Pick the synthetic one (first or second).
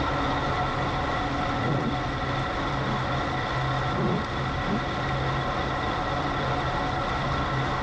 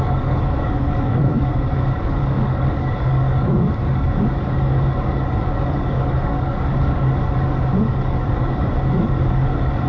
second